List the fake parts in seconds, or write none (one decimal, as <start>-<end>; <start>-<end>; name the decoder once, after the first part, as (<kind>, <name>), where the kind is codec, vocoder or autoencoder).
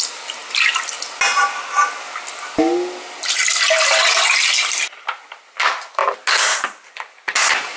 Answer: 0.0-0.4 (vocoder, BigVGAN v2); 5.1-6.0; 6.6-7.8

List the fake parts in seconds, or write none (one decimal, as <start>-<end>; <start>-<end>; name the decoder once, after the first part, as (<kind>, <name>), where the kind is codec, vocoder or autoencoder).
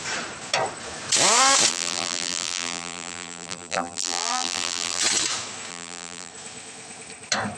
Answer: 1.7-5.0 (vocoder, BigVGAN v2); 5.7-6.3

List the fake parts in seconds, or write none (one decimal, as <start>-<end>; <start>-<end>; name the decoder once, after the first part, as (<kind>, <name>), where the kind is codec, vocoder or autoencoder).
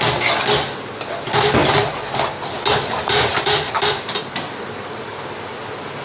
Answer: 1.6-2.6 (vocoder, BigVGAN v2); 3.3-5.1